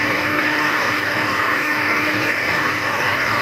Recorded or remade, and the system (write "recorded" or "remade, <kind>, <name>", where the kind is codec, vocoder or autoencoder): remade, codec, DAC